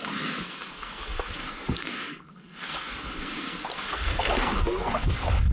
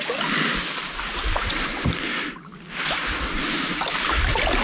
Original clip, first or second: second